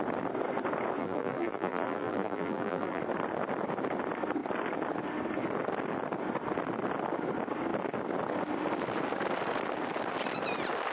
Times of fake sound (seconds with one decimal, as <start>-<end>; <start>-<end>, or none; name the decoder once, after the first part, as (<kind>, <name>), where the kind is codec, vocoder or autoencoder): 1.0-3.0 (vocoder, BigVGAN v2)